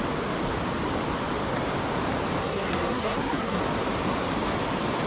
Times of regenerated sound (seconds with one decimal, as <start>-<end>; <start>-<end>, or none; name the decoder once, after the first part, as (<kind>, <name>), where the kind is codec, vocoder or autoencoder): 2.4-3.6 (codec, SNAC)